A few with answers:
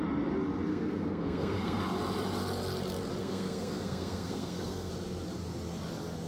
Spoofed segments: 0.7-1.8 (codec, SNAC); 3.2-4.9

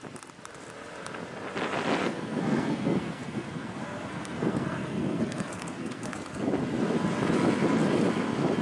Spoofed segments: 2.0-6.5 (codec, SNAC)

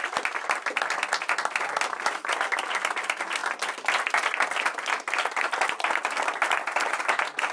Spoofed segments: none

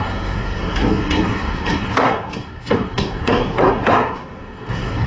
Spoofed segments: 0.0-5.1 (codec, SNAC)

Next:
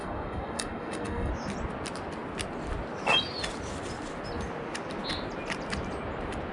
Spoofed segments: 0.0-1.3 (codec, SNAC)

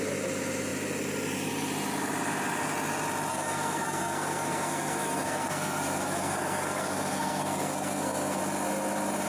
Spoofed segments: 3.3-8.4 (codec, SNAC)

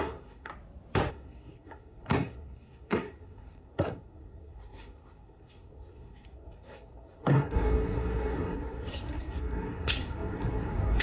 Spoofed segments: 0.0-0.5 (codec, SNAC); 1.1-11.0